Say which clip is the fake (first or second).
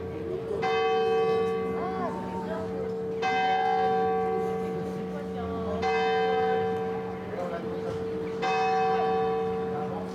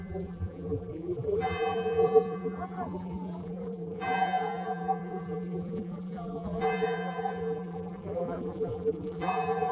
second